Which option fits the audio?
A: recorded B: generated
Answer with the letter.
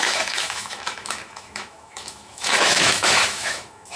B